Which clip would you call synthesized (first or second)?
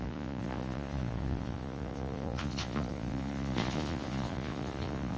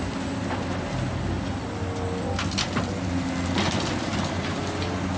first